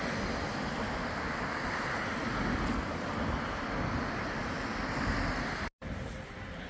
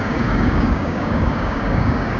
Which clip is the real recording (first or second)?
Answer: first